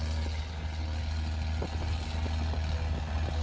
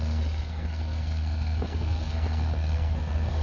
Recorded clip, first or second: first